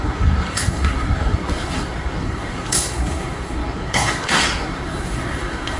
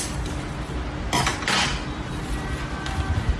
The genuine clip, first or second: second